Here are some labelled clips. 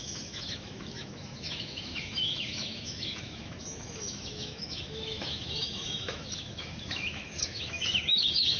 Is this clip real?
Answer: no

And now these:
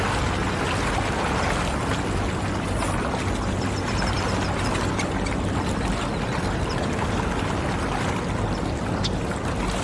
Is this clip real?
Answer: yes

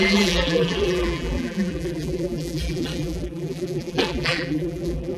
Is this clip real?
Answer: no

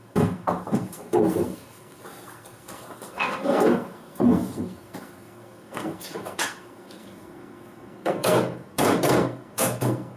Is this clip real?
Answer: no